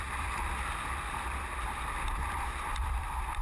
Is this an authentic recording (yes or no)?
no